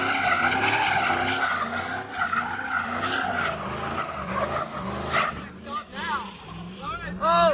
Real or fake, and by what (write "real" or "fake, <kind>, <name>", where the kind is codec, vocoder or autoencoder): real